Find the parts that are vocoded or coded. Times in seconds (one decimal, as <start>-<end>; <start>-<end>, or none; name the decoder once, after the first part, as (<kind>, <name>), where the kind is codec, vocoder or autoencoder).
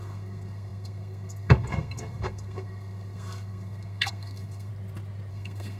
0.0-4.7 (codec, SNAC); 5.3-5.8